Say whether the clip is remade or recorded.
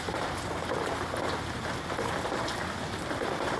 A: recorded